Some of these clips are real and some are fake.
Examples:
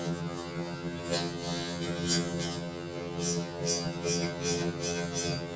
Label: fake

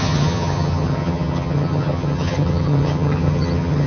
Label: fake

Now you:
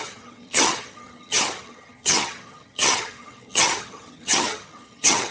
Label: fake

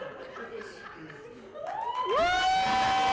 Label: real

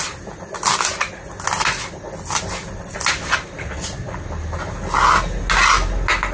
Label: real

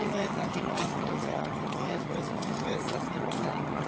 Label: fake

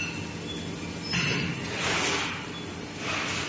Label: real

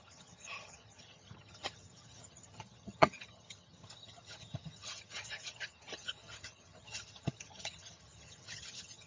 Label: fake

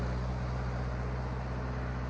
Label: real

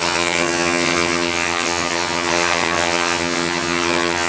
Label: fake